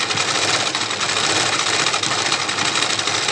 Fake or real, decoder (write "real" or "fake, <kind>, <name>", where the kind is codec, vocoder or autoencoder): real